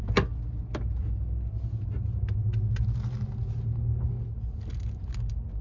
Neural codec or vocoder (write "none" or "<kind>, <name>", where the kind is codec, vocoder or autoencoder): none